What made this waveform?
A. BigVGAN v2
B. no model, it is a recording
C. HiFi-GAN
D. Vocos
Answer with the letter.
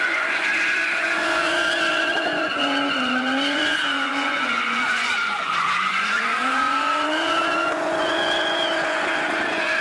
D